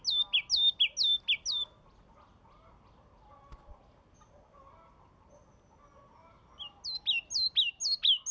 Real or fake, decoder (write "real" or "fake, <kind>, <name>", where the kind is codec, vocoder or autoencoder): real